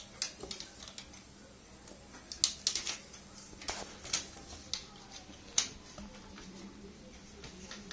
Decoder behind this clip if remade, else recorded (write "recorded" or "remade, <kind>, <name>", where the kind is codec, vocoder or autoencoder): recorded